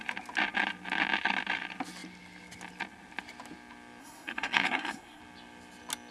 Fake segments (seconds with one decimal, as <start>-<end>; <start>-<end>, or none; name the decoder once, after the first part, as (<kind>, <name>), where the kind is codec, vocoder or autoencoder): 4.0-5.2 (codec, SNAC)